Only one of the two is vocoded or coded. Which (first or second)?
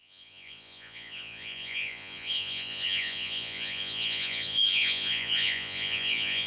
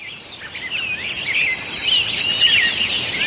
first